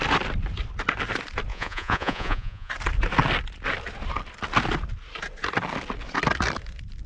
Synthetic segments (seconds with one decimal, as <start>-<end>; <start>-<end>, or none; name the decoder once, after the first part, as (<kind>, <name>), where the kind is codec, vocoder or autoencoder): 1.5-2.7 (vocoder, Vocos)